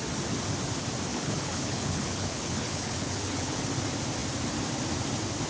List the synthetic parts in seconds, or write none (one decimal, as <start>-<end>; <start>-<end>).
1.1-3.6